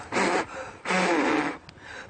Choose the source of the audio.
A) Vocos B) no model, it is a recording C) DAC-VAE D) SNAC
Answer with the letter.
B